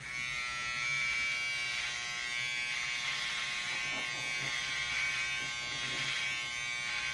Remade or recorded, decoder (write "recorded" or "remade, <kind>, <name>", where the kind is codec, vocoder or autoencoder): recorded